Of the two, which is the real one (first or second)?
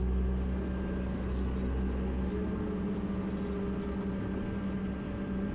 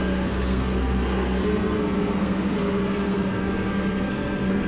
first